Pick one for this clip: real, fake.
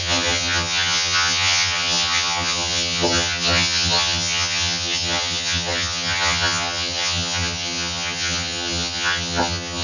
fake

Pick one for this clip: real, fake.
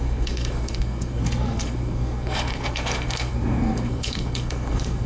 fake